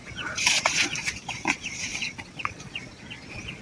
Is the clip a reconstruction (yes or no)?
yes